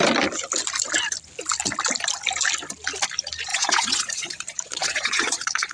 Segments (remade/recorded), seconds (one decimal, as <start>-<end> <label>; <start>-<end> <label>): 0.0-3.5 recorded; 3.5-5.7 remade